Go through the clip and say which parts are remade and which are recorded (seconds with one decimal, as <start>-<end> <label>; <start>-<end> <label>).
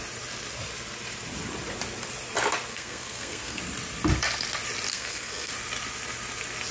0.0-2.7 recorded; 2.7-3.6 remade; 3.6-4.9 recorded; 4.9-5.5 remade; 5.5-6.7 recorded